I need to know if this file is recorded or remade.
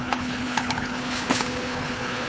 remade